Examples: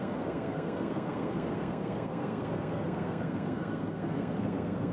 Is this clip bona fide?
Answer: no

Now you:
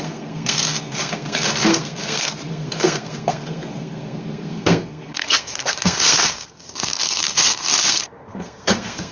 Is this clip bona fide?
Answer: no